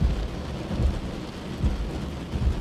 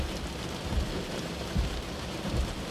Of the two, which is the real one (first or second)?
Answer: first